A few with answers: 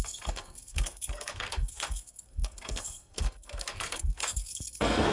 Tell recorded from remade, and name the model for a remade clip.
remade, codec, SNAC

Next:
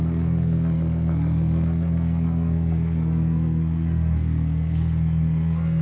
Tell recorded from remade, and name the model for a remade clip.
remade, codec, SNAC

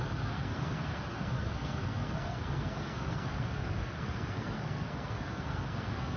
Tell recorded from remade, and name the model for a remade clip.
remade, codec, SNAC